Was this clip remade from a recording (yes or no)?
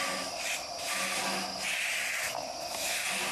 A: no